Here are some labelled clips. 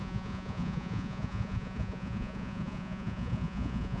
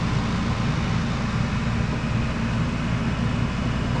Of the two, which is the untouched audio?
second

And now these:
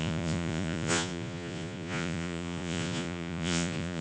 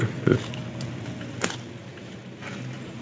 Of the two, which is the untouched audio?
second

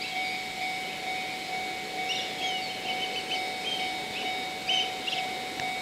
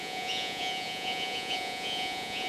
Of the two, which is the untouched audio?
first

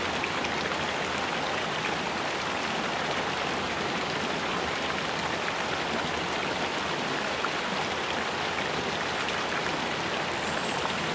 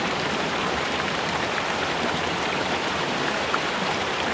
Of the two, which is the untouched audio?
first